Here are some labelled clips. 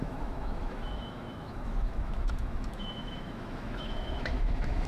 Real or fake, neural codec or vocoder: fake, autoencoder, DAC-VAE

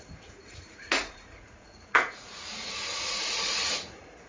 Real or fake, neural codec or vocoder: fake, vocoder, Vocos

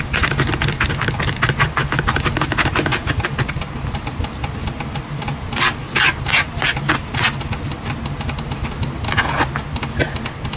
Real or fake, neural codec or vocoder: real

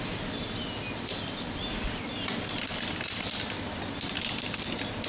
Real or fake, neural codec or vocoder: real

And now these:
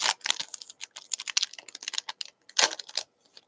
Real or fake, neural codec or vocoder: real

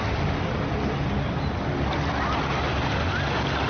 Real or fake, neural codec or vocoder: real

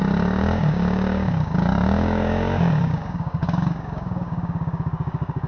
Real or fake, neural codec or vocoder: fake, codec, DAC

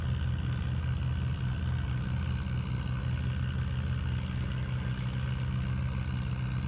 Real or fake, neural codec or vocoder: real